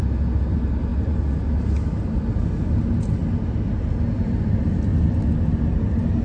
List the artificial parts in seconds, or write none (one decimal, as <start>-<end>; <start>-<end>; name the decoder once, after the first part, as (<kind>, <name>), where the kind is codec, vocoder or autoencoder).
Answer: none